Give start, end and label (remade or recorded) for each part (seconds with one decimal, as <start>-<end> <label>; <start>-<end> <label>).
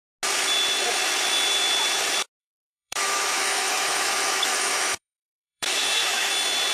0.0-2.4 recorded; 2.4-6.3 remade; 6.3-6.7 recorded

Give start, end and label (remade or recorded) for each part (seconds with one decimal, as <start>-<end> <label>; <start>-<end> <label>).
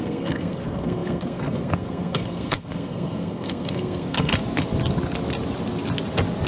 0.0-4.3 remade; 4.3-6.5 recorded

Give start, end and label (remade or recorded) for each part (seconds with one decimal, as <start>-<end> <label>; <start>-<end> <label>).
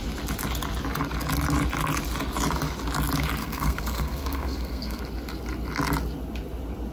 0.0-3.4 recorded; 3.4-5.0 remade; 5.0-6.9 recorded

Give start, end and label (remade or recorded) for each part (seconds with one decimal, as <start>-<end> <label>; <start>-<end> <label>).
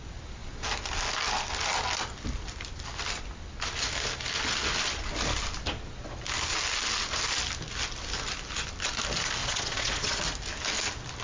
0.0-9.4 recorded; 9.4-10.2 remade; 10.2-11.2 recorded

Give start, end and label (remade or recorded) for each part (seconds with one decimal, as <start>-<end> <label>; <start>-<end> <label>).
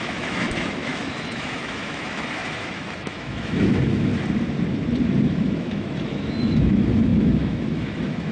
0.0-4.1 remade; 4.1-5.3 recorded; 5.3-8.3 remade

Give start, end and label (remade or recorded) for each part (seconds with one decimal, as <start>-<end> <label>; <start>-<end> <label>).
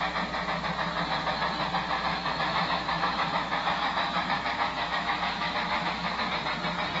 0.0-2.1 recorded; 2.1-6.3 remade; 6.3-7.0 recorded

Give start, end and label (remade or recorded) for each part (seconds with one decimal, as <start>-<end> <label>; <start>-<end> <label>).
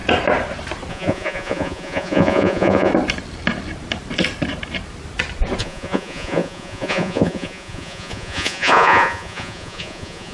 0.0-0.9 recorded; 0.9-2.9 remade; 2.9-5.6 recorded; 5.6-10.3 remade